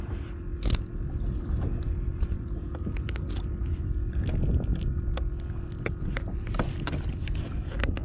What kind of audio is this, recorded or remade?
recorded